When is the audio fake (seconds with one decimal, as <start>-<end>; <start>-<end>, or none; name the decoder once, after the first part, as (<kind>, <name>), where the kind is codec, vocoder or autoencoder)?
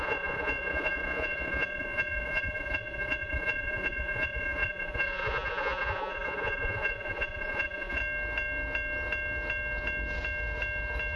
0.0-8.0 (vocoder, Vocos)